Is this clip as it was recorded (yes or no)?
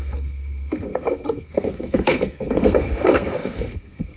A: no